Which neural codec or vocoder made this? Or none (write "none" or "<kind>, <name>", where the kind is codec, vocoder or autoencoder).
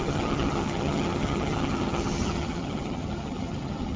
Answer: vocoder, HiFi-GAN